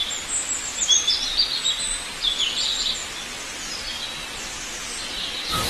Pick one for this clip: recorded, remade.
recorded